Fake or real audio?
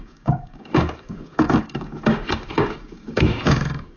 fake